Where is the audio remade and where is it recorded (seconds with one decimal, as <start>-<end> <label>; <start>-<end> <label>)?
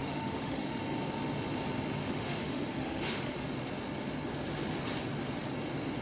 0.0-0.8 remade; 0.8-2.0 recorded; 2.0-3.4 remade; 3.4-6.0 recorded